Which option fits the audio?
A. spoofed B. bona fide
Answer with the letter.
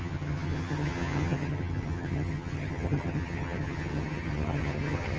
A